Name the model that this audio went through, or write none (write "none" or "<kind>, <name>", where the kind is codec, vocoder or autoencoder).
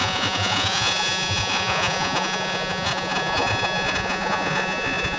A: vocoder, Vocos